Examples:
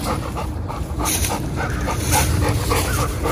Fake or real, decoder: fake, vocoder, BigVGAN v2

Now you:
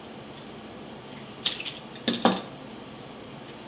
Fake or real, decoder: real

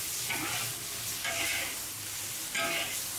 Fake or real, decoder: real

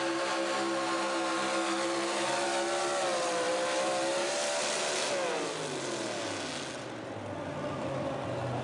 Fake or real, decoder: real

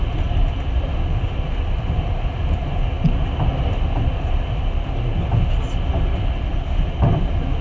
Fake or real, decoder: real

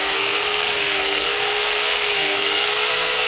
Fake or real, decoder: fake, codec, SNAC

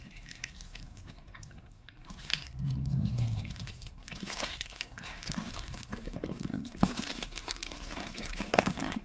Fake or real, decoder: fake, codec, SNAC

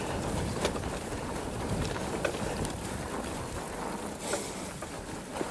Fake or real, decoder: real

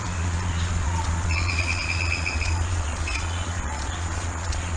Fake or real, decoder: fake, vocoder, Vocos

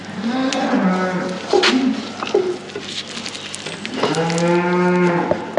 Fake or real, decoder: real